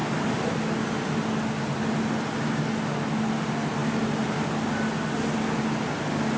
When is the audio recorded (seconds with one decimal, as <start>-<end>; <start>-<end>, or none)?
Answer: 0.0-6.4